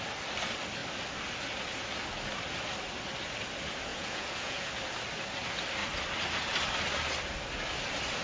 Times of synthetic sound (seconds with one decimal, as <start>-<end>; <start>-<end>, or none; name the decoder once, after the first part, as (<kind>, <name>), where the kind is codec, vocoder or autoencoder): 3.9-4.7 (vocoder, Vocos)